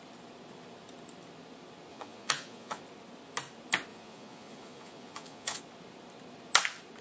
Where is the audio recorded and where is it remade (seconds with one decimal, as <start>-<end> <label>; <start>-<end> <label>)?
0.0-1.9 recorded; 1.9-2.8 remade; 2.8-3.9 recorded; 3.9-5.6 remade; 5.6-7.0 recorded